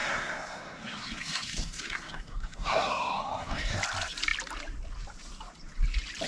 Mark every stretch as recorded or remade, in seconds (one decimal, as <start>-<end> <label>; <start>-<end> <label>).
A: 0.0-3.8 remade; 3.8-6.3 recorded